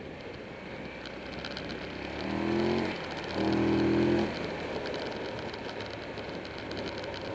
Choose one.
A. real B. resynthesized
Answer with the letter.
A